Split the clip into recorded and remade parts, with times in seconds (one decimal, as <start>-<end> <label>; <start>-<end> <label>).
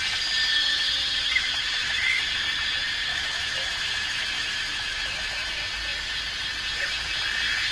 0.0-0.5 recorded; 0.5-2.2 remade; 2.2-3.1 recorded; 3.1-5.5 remade; 5.5-7.7 recorded